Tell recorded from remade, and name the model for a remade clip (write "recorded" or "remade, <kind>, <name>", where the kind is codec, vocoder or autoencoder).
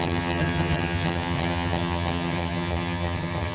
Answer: remade, vocoder, HiFi-GAN